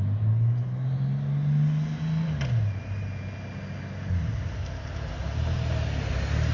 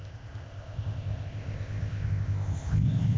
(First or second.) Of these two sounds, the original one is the first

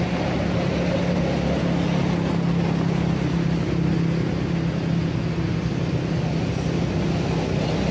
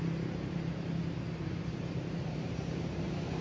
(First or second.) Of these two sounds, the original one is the first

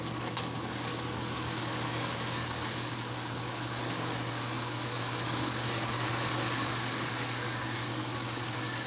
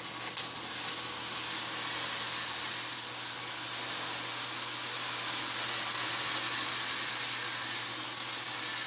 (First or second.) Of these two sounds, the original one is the second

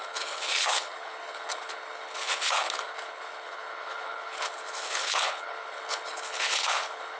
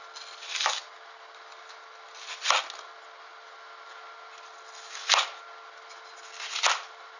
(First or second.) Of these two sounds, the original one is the second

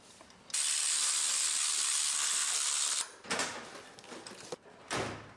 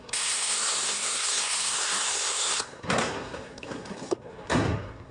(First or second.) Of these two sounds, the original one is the first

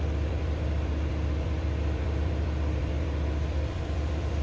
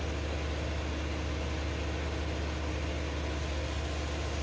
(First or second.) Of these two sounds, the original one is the second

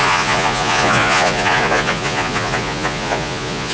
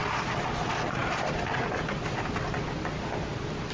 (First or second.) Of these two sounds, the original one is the second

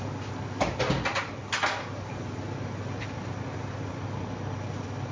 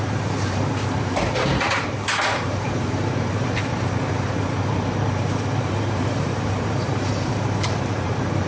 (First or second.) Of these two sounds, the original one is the first